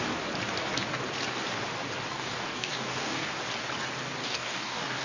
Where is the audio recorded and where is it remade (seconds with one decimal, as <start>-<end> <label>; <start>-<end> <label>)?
0.0-2.1 recorded; 2.1-3.3 remade; 3.3-4.2 recorded; 4.2-5.0 remade